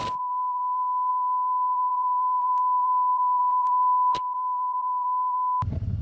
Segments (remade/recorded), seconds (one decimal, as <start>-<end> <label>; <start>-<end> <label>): 0.0-6.0 remade